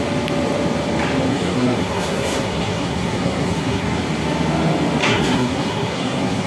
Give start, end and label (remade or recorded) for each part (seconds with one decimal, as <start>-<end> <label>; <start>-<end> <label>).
0.0-1.3 recorded; 1.3-4.0 remade; 4.0-5.0 recorded; 5.0-6.5 remade